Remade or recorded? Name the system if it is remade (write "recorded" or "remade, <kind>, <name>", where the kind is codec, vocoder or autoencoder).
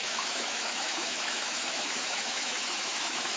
remade, autoencoder, DAC-VAE